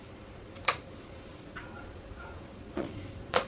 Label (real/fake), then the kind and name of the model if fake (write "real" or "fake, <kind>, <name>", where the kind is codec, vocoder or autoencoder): fake, vocoder, Vocos